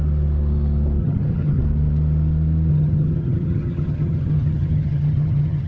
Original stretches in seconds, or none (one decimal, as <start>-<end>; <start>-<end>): 0.0-1.0; 1.6-2.7